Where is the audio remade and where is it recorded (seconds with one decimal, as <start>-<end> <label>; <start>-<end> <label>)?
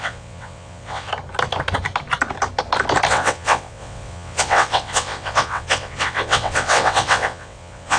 0.0-1.1 remade; 1.1-3.1 recorded; 3.1-8.0 remade